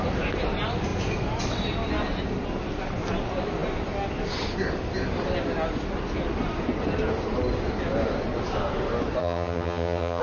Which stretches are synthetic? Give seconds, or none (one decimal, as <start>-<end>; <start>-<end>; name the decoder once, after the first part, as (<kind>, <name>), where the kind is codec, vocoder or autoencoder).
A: 9.2-10.2 (vocoder, HiFi-GAN)

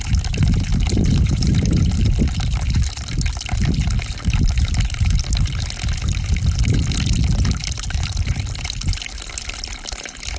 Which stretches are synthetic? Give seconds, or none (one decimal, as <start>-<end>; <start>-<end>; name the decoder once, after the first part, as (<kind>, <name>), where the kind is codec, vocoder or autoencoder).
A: 0.7-1.9 (vocoder, BigVGAN v2)

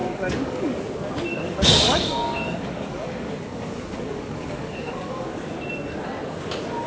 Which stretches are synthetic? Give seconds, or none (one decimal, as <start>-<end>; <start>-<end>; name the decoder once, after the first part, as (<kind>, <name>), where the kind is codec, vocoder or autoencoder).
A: 0.0-0.8 (codec, DAC); 1.3-5.4

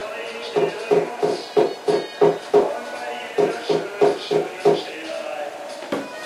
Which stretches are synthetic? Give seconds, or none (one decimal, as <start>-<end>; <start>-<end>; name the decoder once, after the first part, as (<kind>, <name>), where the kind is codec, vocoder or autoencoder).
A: 0.0-1.2 (vocoder, BigVGAN v2)

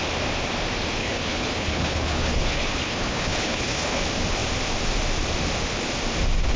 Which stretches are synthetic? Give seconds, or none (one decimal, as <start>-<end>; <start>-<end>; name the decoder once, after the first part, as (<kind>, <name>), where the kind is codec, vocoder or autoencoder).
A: 1.0-4.0 (codec, HILCodec)